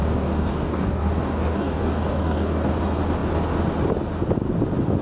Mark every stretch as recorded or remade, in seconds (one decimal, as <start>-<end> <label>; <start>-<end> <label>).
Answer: 0.0-2.7 remade; 2.7-5.0 recorded